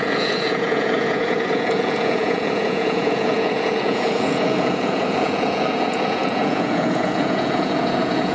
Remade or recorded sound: remade